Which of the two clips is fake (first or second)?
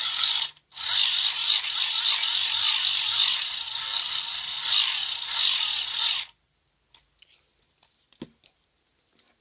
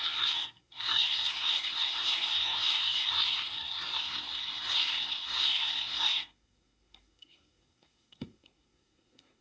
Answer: second